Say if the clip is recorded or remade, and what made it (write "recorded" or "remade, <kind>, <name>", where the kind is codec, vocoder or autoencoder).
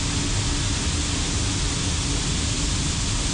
recorded